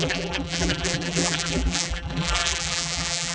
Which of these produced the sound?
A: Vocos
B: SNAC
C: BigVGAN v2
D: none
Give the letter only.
C